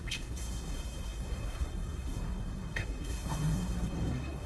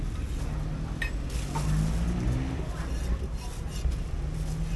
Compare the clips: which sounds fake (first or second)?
first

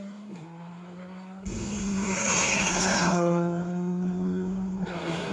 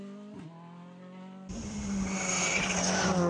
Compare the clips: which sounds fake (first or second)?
first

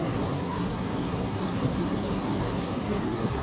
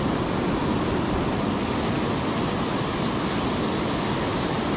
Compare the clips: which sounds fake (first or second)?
first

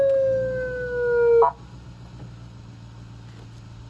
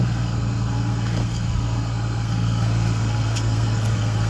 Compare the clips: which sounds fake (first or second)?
second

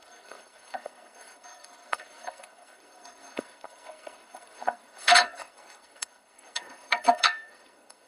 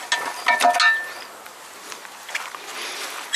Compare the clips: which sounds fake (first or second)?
first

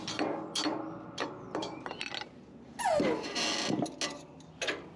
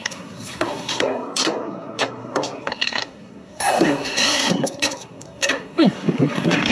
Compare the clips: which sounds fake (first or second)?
second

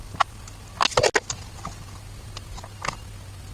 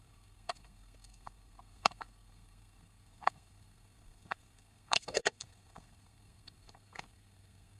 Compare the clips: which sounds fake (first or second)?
second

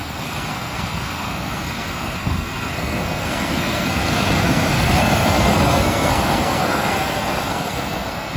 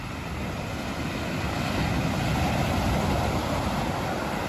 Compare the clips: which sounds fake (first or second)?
first